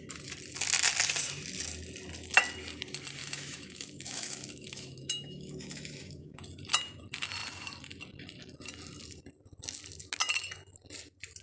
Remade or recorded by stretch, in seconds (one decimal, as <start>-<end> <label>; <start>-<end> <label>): 0.0-3.2 recorded; 3.2-6.4 remade; 6.4-11.4 recorded